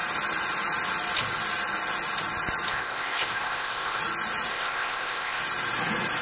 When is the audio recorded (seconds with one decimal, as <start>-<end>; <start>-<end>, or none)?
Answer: 0.0-2.7; 4.0-4.5; 5.4-6.2